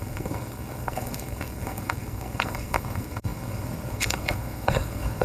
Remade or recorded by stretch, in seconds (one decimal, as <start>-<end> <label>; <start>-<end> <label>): 0.0-5.2 remade